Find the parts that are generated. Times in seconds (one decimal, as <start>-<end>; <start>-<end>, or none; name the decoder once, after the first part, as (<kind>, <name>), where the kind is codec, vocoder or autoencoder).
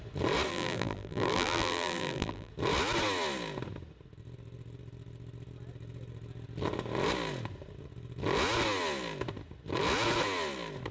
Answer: 0.5-2.5 (vocoder, BigVGAN v2)